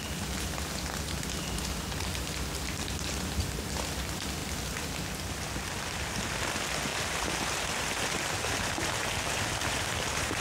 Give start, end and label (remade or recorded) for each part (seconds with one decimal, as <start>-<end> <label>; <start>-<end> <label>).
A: 0.0-10.4 recorded